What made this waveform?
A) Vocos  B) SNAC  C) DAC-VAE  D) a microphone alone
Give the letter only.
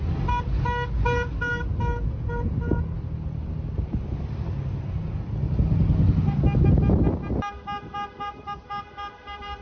D